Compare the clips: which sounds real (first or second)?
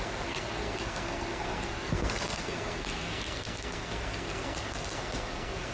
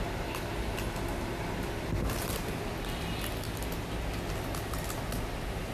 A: second